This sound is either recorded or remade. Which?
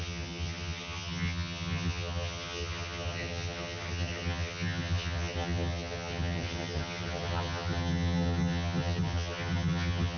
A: remade